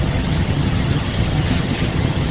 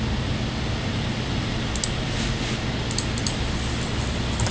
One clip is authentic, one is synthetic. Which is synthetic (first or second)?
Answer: first